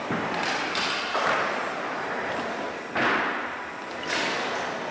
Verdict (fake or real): real